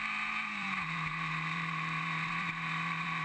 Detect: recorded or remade remade